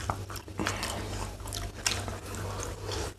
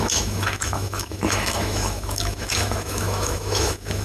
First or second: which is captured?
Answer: first